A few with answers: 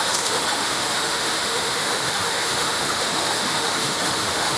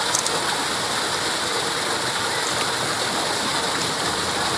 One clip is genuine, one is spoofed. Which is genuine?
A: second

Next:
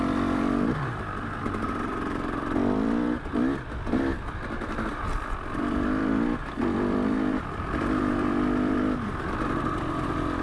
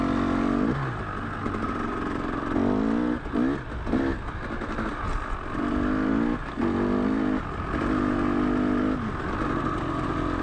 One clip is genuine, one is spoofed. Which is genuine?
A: second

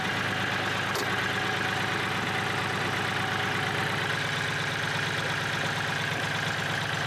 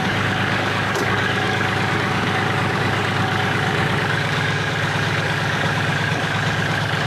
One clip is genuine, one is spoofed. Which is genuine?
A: first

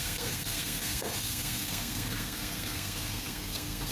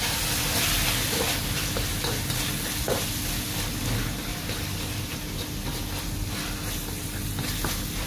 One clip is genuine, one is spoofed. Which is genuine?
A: second